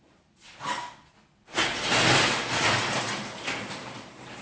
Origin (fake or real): real